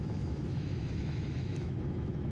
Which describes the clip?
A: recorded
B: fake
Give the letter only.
B